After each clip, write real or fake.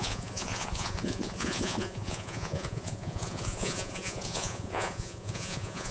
fake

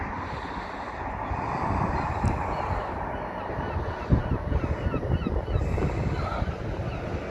real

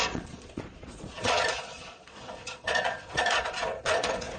fake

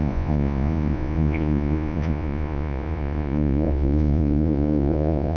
fake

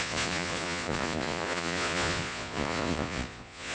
fake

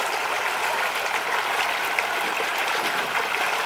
real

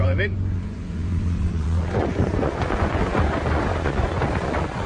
fake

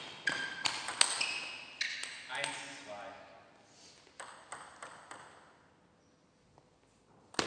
real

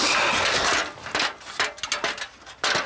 real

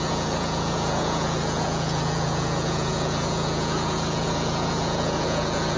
fake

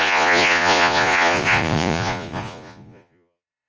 fake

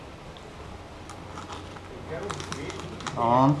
real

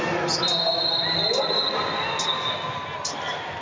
real